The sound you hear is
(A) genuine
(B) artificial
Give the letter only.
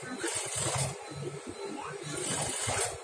A